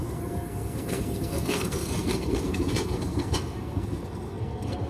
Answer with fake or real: fake